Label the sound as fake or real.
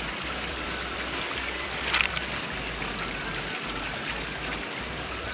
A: real